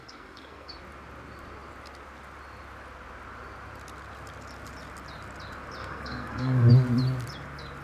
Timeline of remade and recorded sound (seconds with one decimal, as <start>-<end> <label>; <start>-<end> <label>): 0.0-0.8 remade; 0.8-5.8 recorded; 5.8-6.7 remade; 6.7-7.8 recorded